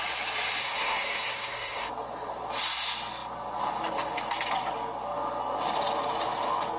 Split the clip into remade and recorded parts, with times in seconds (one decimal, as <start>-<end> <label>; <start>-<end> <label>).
0.0-0.6 recorded; 0.6-1.9 remade; 1.9-6.8 recorded

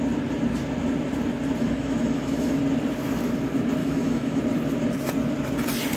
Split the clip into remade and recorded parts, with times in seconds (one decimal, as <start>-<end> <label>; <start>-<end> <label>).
0.0-1.6 recorded; 1.6-2.6 remade; 2.6-3.8 recorded; 3.8-4.4 remade; 4.4-6.0 recorded

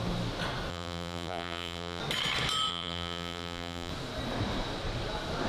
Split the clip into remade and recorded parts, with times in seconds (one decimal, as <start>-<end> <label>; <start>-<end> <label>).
0.0-0.7 recorded; 0.7-2.0 remade; 2.0-2.7 recorded; 2.7-3.9 remade; 3.9-5.5 recorded